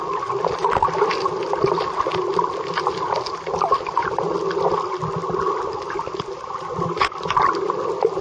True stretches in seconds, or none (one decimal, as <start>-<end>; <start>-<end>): 0.0-8.2